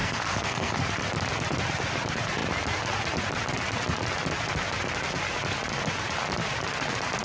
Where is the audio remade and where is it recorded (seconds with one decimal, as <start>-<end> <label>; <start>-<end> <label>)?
0.0-0.8 remade; 0.8-7.2 recorded